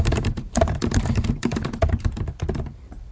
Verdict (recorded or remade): remade